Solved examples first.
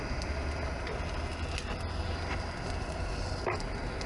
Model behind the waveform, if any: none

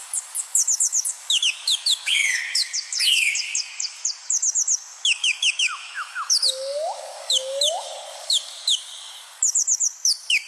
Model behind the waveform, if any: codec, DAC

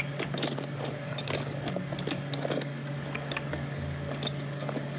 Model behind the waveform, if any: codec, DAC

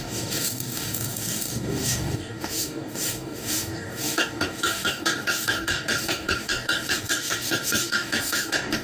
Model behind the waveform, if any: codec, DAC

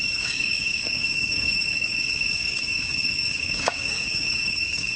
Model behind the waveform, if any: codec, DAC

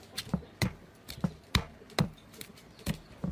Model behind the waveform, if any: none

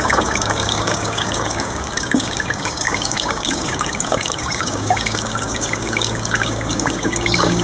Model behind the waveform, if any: codec, DAC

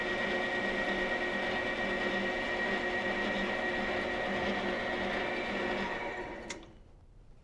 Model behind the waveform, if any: none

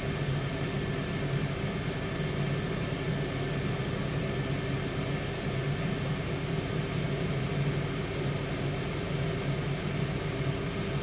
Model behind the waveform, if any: none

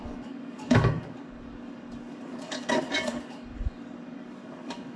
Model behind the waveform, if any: codec, DAC